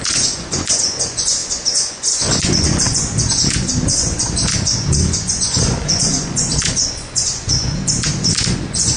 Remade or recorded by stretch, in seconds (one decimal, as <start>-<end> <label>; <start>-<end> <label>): 0.0-9.0 remade